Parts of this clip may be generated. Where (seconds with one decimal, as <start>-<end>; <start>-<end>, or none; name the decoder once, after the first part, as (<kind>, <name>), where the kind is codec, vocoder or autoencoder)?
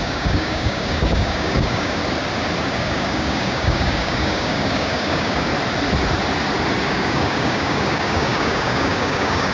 0.0-2.0 (codec, DAC); 2.6-5.5; 6.8-9.5